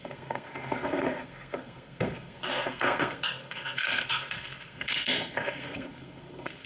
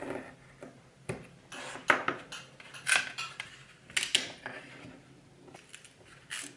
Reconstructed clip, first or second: first